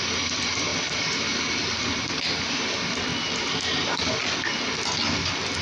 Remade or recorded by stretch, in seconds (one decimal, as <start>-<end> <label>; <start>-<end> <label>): 0.0-5.6 recorded